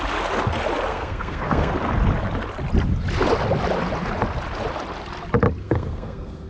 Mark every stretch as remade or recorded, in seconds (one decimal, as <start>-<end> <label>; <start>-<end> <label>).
0.0-0.9 recorded; 0.9-1.7 remade; 1.7-5.6 recorded; 5.6-6.5 remade